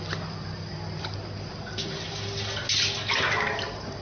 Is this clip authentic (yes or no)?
yes